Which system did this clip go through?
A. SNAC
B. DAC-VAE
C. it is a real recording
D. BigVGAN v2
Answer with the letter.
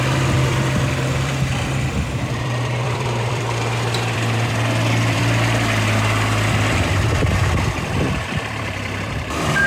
D